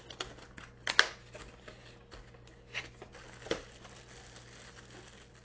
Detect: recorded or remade recorded